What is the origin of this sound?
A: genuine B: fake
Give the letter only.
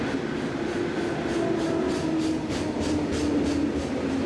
A